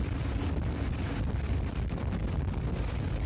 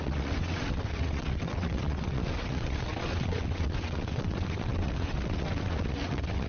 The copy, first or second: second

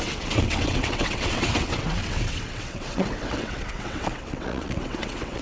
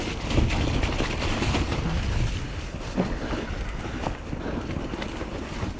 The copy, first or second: first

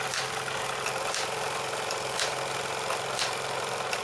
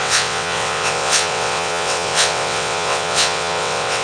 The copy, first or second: second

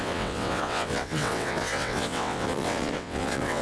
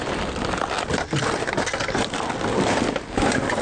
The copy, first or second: first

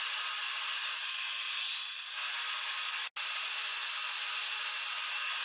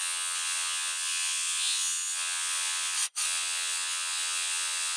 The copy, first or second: second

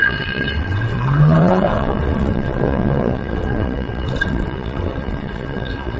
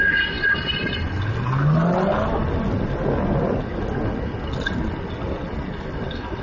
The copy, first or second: first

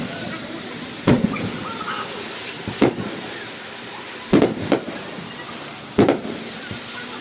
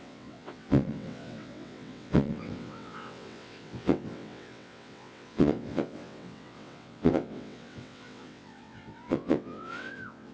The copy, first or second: second